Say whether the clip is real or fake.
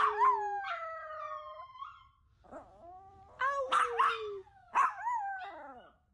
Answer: real